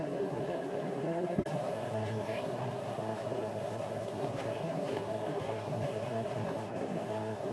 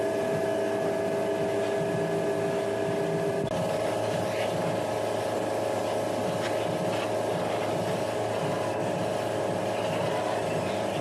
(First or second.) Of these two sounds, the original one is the second